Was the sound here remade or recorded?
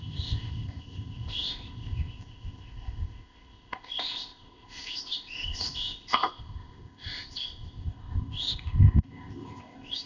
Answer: remade